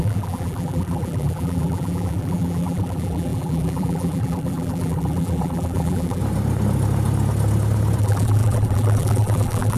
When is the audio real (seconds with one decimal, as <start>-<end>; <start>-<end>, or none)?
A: 6.2-8.0